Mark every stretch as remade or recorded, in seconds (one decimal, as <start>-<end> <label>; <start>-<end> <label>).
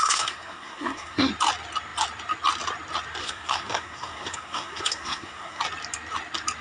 0.0-1.3 remade; 1.3-3.2 recorded; 3.2-5.6 remade; 5.6-6.6 recorded